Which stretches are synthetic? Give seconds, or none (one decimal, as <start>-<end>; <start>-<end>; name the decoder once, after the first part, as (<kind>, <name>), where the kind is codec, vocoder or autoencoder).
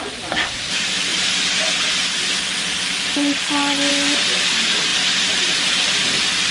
0.0-6.5 (vocoder, BigVGAN v2)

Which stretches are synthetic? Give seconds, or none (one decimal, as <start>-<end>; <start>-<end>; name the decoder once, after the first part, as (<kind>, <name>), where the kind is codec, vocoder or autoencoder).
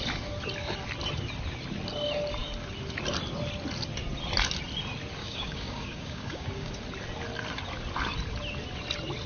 5.2-6.7 (codec, DAC)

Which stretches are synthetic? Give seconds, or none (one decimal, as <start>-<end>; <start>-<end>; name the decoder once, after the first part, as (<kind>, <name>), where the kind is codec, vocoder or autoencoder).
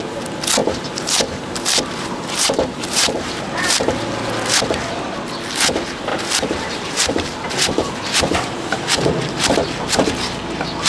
0.6-3.9 (vocoder, BigVGAN v2); 6.1-8.8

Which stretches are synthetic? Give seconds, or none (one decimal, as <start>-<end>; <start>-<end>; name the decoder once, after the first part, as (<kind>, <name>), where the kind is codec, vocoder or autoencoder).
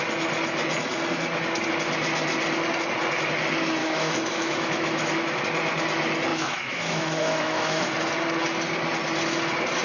3.8-5.4 (autoencoder, DAC-VAE); 6.3-7.8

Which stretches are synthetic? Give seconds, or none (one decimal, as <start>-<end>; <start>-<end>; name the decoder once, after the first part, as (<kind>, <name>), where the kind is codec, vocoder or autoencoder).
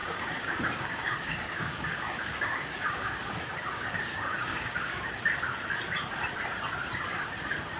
0.0-3.4 (codec, DAC); 4.1-5.1